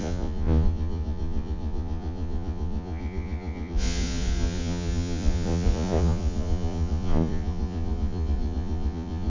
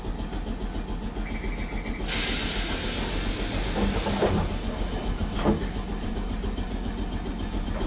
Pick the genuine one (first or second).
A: second